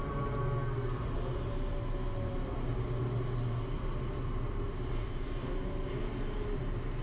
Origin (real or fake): real